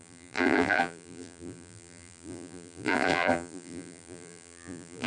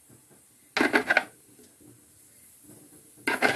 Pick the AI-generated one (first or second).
first